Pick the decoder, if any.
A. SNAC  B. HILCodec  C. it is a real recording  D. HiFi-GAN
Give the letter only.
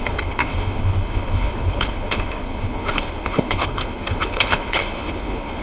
B